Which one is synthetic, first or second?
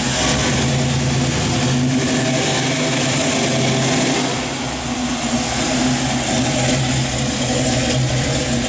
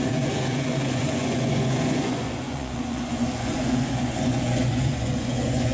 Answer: second